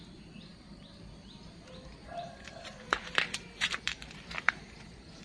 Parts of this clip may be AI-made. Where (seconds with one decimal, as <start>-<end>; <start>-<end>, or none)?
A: 2.0-5.2